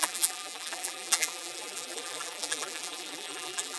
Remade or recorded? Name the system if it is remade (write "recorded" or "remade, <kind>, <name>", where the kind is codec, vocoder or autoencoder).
remade, vocoder, BigVGAN v2